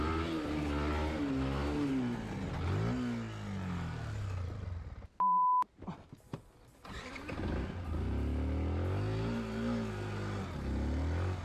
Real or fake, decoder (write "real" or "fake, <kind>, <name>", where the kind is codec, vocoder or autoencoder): real